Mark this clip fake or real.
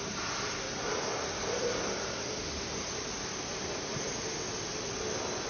real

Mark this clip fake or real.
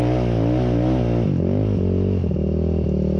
real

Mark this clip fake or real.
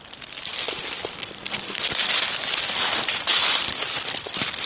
real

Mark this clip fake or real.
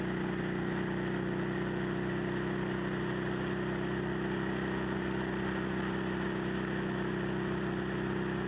real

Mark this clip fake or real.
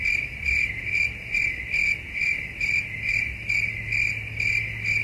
real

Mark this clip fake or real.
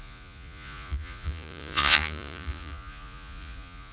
fake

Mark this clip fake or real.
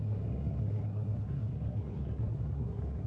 fake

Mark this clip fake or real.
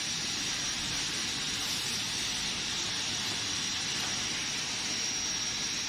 real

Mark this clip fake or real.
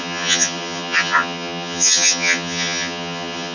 fake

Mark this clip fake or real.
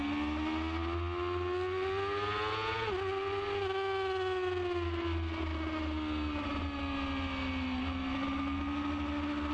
real